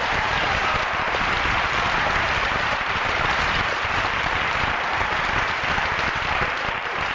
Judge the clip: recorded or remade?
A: remade